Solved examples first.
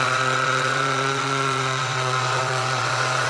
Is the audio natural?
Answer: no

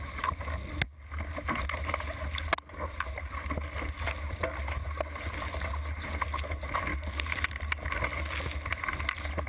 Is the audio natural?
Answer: yes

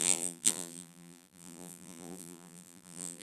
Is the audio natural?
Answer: no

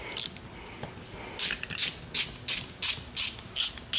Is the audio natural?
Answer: yes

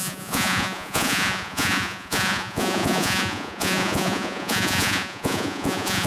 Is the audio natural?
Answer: no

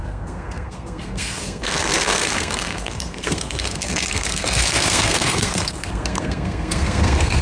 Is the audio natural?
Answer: no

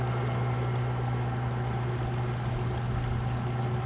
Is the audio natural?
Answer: yes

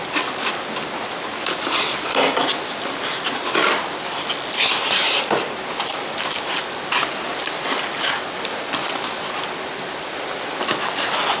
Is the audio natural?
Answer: yes